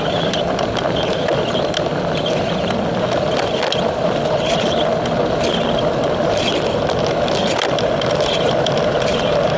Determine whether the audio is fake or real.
real